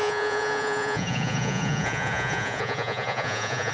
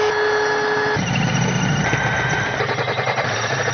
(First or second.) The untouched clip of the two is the second